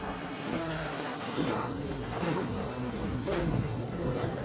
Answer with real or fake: fake